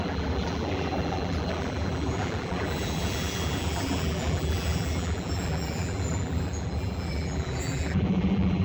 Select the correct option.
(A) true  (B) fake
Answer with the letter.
B